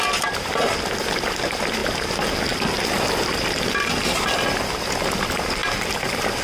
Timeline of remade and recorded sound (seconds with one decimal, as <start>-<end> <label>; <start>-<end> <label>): 0.0-6.4 recorded